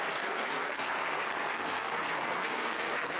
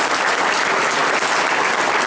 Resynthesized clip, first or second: first